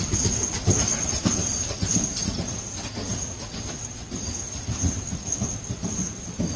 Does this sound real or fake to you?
real